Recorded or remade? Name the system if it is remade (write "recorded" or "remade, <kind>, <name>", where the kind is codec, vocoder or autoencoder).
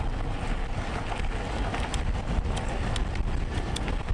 recorded